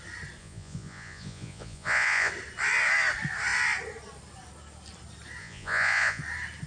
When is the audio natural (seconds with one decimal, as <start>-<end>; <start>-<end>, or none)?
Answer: 0.0-0.4; 2.3-5.4; 6.2-6.7